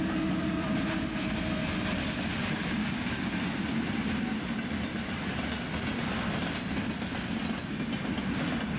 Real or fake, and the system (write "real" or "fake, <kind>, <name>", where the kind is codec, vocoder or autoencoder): real